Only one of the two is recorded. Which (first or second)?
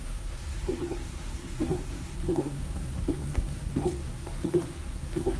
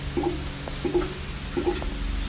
second